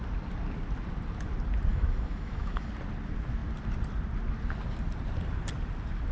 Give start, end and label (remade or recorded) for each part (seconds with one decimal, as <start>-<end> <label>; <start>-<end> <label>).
0.0-1.7 recorded; 1.7-2.7 remade; 2.7-6.1 recorded